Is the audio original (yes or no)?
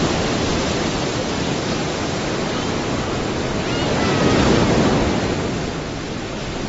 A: yes